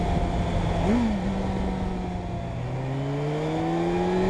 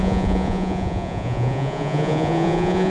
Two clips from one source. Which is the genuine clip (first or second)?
first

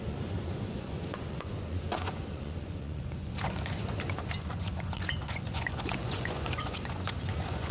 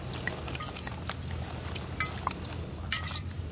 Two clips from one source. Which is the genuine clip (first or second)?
second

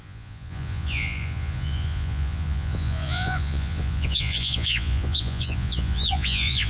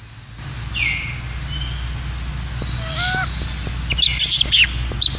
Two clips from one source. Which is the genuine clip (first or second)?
second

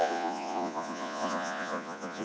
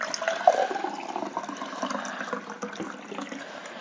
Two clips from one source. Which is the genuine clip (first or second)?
second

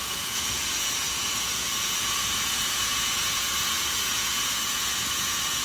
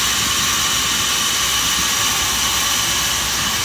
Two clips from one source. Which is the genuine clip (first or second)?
second